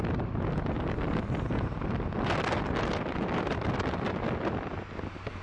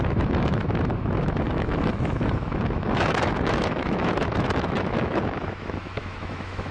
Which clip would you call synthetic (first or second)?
second